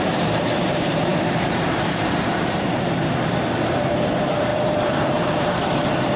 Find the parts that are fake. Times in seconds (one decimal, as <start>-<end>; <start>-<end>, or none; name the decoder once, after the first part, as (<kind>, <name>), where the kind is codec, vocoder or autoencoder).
0.0-6.2 (vocoder, BigVGAN v2)